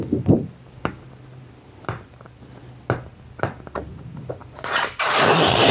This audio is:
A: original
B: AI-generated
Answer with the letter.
A